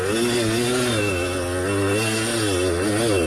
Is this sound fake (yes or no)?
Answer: no